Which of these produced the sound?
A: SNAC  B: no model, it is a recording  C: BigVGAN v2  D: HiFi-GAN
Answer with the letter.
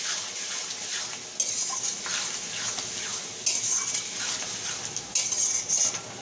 B